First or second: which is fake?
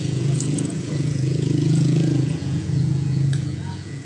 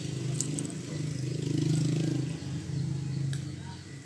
first